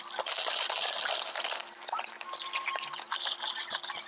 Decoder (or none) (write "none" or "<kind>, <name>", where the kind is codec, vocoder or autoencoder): none